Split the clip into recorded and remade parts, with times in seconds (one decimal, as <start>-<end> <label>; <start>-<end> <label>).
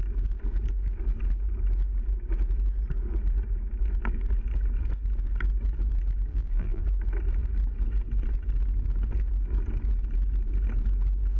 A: 0.0-6.3 recorded; 6.3-6.8 remade; 6.8-11.4 recorded